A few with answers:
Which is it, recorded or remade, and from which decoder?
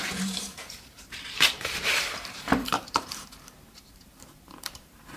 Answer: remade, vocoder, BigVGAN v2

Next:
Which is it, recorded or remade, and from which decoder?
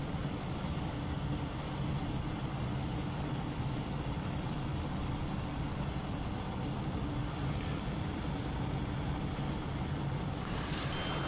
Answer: recorded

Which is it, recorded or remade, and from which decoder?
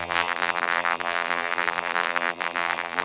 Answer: remade, vocoder, BigVGAN v2